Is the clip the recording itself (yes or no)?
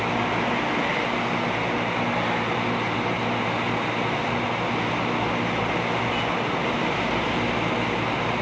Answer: yes